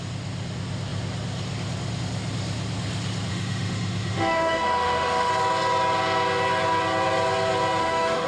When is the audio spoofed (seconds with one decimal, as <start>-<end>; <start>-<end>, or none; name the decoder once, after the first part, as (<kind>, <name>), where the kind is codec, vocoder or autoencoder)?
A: 3.3-5.3 (autoencoder, DAC-VAE); 7.8-8.3